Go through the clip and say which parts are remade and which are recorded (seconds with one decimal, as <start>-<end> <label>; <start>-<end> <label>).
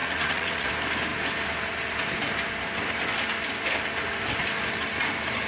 0.0-0.7 remade; 0.7-5.5 recorded